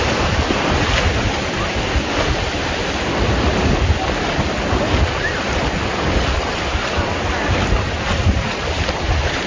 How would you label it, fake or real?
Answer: real